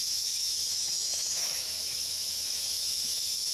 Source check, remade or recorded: remade